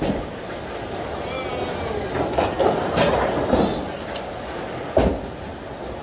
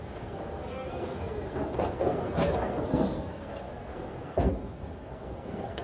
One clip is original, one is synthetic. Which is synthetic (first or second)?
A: second